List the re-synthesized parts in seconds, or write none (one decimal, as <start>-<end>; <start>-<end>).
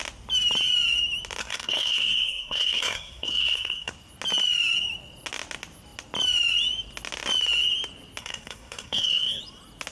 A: 1.4-3.9; 8.2-9.4